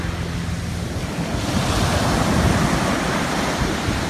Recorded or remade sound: recorded